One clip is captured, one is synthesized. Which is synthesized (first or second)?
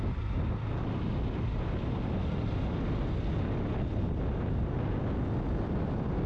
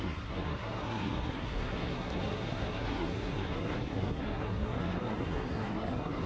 second